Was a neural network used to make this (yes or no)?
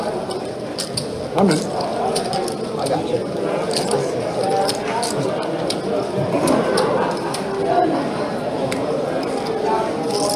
no